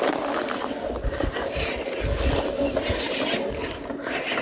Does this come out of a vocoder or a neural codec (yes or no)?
no